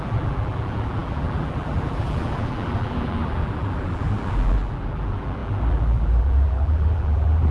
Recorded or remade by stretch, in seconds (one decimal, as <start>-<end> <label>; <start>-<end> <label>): 0.0-7.5 remade